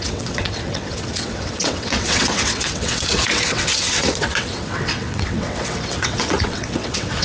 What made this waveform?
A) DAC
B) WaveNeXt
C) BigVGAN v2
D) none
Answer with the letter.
B